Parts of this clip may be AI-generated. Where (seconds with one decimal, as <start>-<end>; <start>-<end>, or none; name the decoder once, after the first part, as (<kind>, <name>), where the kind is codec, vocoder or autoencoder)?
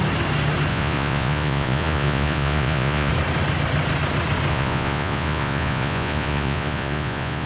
0.7-3.1 (vocoder, Vocos); 4.5-7.5